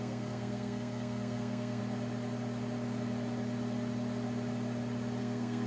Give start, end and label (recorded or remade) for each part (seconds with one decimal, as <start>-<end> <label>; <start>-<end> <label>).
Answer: 0.0-1.8 remade; 1.8-5.2 recorded; 5.2-5.7 remade